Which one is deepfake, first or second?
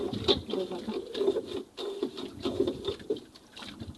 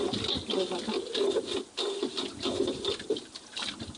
first